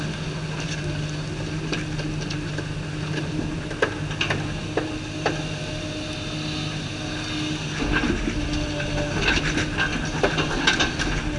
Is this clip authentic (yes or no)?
yes